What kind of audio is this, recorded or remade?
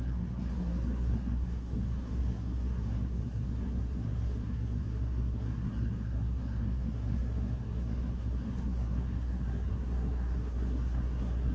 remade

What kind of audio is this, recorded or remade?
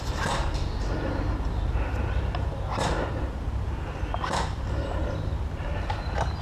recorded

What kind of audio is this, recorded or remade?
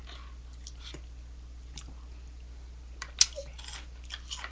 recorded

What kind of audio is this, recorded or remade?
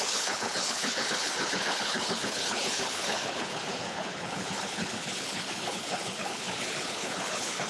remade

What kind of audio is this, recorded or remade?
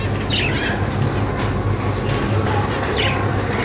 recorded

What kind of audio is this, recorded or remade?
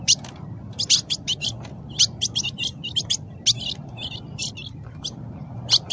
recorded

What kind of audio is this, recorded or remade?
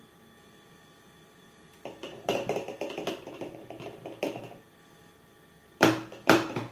remade